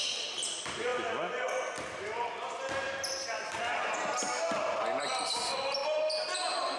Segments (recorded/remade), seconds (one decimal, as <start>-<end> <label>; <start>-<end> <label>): 0.0-6.8 recorded